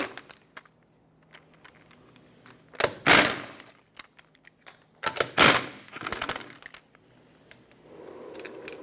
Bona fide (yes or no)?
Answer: yes